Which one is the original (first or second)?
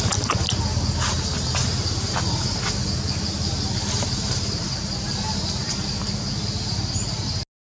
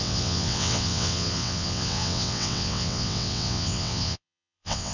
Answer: first